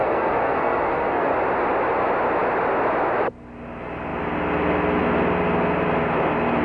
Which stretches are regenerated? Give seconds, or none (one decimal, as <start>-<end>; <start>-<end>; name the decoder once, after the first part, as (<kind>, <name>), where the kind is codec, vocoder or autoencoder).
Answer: 0.0-1.3 (codec, SNAC)